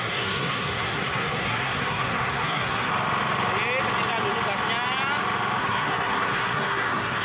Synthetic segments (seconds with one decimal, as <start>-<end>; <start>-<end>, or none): 0.0-2.9; 5.6-7.2